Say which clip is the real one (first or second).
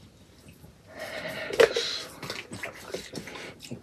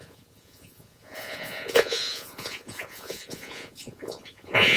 first